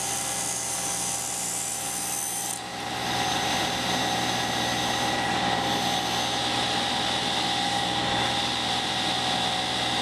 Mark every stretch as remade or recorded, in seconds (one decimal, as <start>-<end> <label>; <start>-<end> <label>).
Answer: 0.0-10.0 recorded